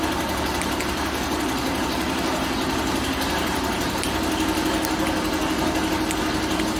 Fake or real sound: real